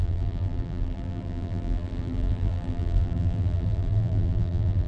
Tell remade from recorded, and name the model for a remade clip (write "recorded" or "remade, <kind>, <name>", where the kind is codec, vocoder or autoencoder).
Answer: remade, vocoder, BigVGAN v2